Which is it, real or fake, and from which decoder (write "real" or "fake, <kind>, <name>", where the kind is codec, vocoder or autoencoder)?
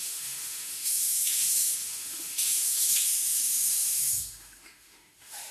fake, autoencoder, DAC-VAE